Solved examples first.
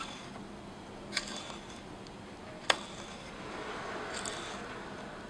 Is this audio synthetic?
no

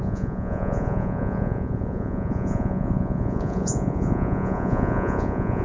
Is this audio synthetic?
yes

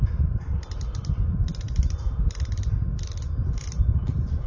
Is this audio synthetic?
no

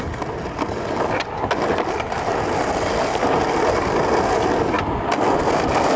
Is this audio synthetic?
no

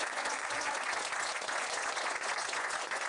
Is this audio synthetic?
yes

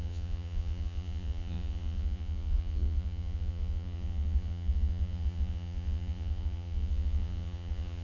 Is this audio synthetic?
yes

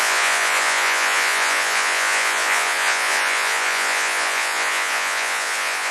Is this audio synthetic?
yes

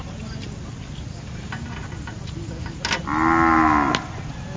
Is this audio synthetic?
no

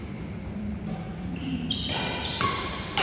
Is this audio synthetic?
no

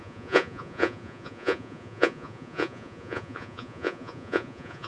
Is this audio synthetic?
yes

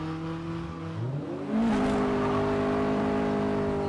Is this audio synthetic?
no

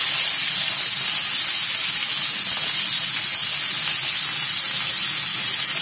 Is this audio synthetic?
no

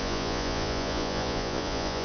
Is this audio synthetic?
yes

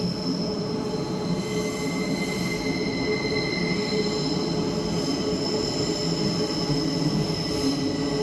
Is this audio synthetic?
no